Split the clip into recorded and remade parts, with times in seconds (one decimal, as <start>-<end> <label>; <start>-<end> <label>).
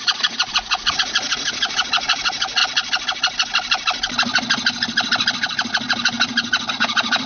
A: 0.0-2.6 remade; 2.6-6.7 recorded; 6.7-7.3 remade